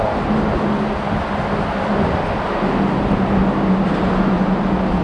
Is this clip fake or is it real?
real